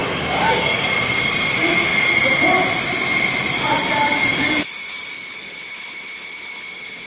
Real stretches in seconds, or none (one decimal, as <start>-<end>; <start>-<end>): 1.3-4.3; 5.6-7.1